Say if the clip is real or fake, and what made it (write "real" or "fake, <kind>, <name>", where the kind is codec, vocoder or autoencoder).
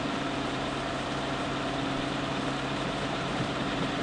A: fake, vocoder, BigVGAN v2